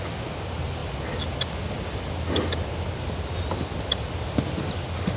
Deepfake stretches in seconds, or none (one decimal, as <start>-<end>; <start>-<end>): none